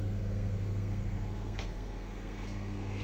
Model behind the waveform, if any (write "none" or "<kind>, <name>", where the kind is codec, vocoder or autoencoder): codec, SNAC